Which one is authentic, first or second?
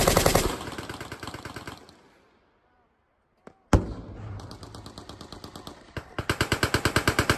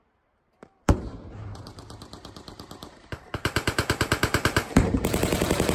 first